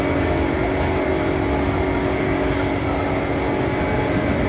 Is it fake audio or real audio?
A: real